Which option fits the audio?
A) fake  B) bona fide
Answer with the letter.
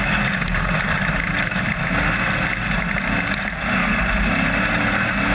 B